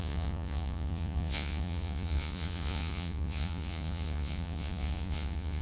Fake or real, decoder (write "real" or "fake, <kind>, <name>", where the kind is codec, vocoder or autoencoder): fake, vocoder, Vocos